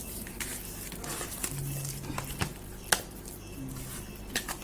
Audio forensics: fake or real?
real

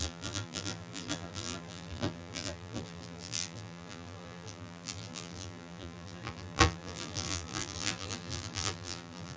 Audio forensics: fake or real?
fake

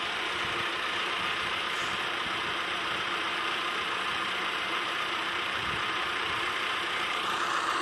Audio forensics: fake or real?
fake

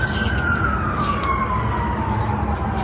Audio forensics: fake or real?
real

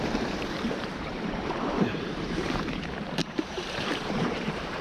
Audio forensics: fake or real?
fake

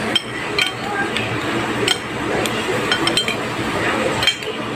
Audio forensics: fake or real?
real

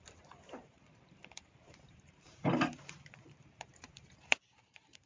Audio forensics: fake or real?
fake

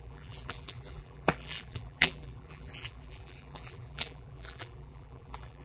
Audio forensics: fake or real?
fake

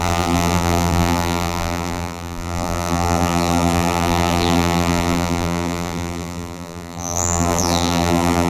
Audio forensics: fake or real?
fake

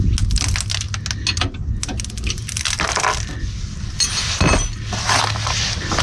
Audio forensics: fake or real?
real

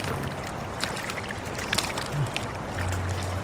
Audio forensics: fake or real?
real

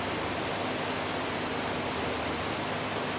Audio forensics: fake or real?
real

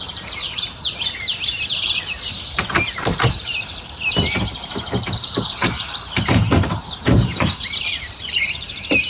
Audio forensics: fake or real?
fake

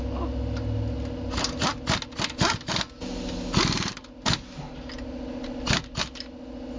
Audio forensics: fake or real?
real